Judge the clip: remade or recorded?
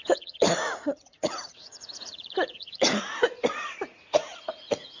remade